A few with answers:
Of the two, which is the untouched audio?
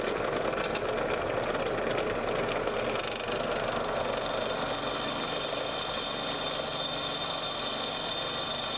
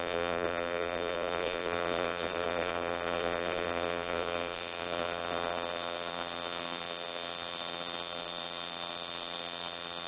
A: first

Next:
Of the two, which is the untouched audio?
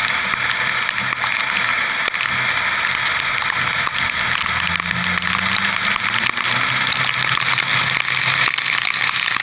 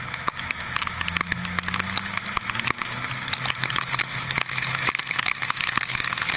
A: first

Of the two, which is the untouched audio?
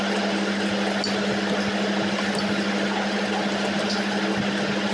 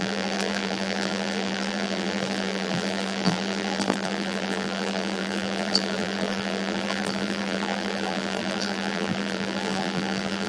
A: first